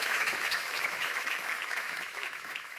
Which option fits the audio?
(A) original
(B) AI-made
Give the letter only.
B